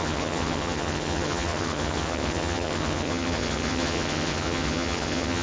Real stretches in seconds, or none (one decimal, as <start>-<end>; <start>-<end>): none